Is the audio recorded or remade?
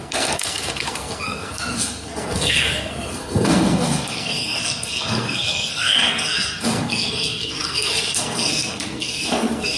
remade